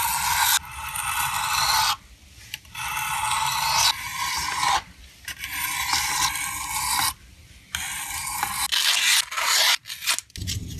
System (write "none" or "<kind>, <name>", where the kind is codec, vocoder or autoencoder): none